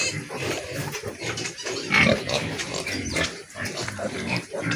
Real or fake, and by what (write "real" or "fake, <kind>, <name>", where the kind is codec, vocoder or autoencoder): fake, vocoder, BigVGAN v2